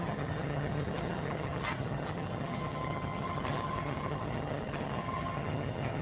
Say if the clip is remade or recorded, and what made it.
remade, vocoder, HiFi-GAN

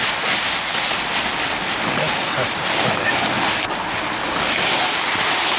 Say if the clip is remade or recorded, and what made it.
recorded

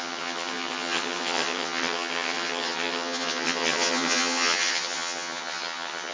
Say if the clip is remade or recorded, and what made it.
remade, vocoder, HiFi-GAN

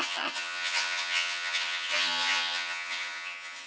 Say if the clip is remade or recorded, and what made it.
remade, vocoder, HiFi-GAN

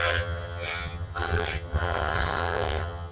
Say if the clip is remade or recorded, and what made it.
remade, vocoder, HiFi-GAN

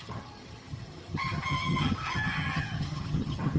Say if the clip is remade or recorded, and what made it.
remade, vocoder, HiFi-GAN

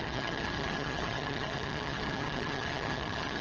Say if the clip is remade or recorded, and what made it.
remade, vocoder, HiFi-GAN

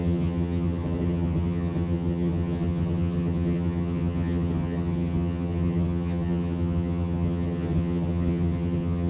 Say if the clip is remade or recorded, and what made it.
remade, vocoder, HiFi-GAN